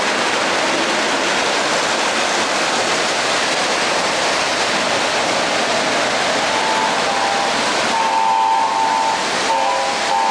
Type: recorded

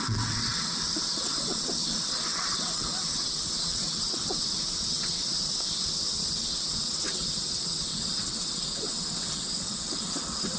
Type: remade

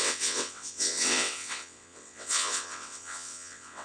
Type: remade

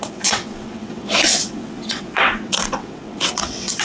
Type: remade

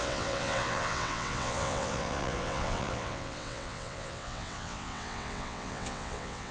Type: remade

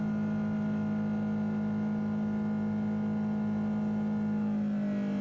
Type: recorded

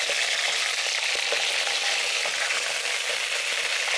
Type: recorded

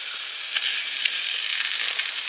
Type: recorded